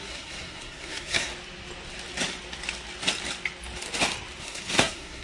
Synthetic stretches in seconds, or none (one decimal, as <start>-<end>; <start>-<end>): 0.0-1.3; 4.4-5.2